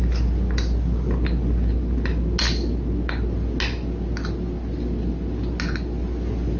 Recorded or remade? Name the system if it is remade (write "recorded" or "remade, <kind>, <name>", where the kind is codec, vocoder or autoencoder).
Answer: recorded